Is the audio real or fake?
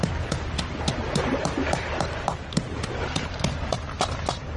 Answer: real